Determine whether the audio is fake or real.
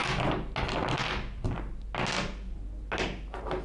real